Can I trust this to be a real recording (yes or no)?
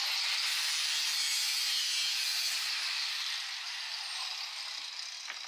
yes